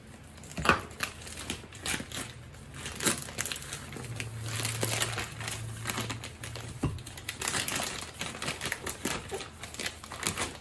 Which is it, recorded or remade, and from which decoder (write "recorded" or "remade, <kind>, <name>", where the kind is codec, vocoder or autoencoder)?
recorded